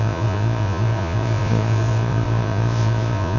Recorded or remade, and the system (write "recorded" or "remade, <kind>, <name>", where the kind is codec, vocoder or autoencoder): remade, vocoder, Vocos